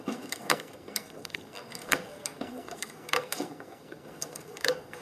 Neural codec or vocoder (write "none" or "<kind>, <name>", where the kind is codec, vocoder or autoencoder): codec, SNAC